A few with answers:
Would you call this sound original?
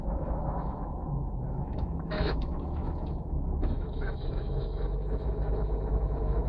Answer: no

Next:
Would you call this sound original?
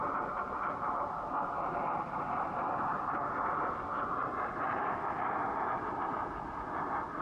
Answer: yes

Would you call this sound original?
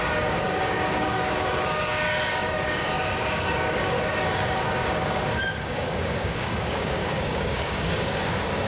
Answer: no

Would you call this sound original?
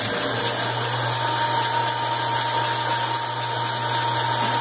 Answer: yes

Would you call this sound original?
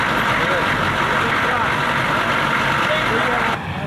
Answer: yes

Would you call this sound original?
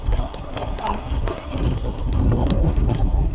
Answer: no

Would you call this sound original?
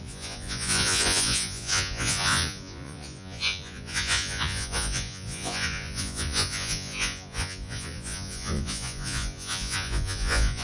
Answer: no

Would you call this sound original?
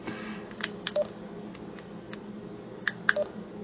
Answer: yes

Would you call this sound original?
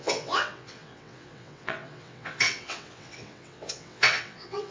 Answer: no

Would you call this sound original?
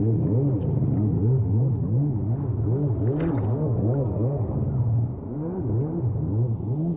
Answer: yes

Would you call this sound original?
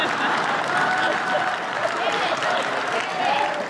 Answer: yes